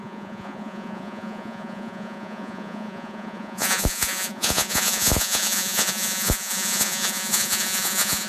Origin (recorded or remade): remade